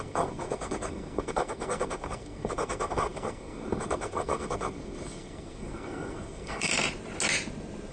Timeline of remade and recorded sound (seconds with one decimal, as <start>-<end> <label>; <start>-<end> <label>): 0.0-6.7 remade; 6.7-7.9 recorded